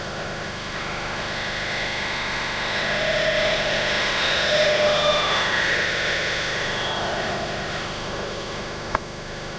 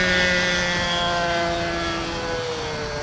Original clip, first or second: second